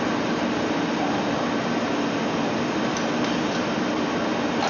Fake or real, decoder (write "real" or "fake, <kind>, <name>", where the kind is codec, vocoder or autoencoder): real